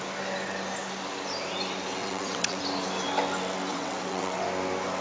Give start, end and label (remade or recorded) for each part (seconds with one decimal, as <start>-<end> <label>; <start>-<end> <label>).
0.0-1.9 recorded; 1.9-2.6 remade; 2.6-3.7 recorded; 3.7-4.4 remade; 4.4-5.0 recorded